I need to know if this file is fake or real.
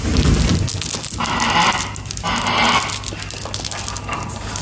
real